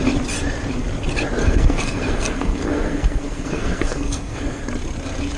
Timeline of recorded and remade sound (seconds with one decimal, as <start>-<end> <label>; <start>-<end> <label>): 0.0-1.4 recorded; 1.4-4.6 remade; 4.6-5.4 recorded